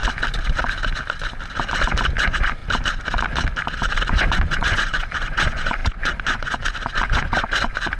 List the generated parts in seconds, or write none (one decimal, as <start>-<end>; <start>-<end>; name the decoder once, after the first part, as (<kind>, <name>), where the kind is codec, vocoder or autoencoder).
2.2-2.6 (vocoder, Vocos); 4.1-8.0